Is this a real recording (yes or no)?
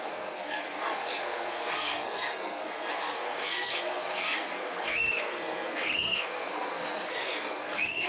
no